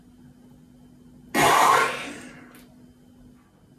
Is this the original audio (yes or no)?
yes